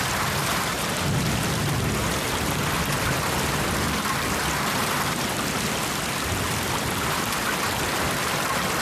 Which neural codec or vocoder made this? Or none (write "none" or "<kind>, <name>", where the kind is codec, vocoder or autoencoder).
none